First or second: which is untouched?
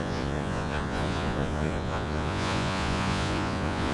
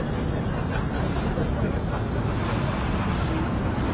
second